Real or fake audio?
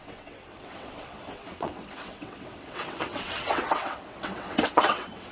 fake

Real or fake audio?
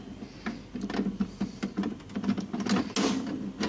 real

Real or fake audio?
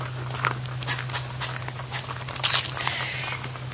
real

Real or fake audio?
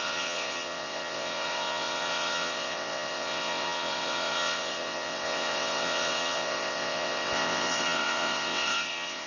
fake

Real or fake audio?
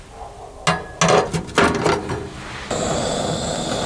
real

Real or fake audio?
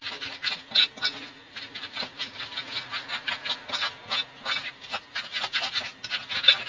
real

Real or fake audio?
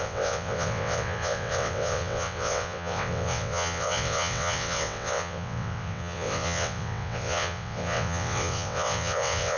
fake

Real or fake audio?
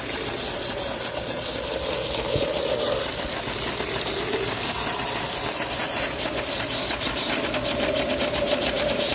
real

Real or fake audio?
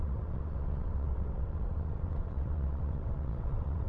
fake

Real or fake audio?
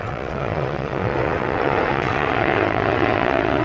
fake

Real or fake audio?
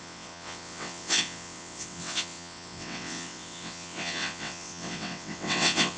fake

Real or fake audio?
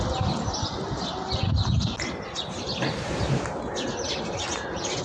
real